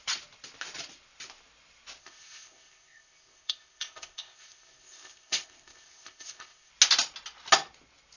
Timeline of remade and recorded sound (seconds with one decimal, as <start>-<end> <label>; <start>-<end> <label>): 0.0-2.0 recorded; 2.0-6.7 remade; 6.7-8.2 recorded